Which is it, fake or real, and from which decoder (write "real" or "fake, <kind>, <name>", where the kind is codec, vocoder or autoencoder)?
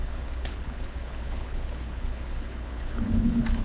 fake, codec, HILCodec